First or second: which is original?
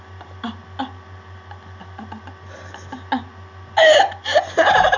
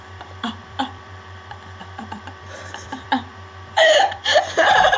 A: first